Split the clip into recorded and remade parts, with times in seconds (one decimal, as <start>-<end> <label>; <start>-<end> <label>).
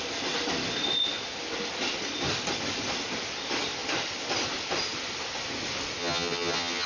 0.0-6.0 recorded; 6.0-6.9 remade